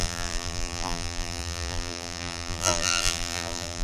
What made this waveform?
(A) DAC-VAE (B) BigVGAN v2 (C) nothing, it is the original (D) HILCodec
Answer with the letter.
B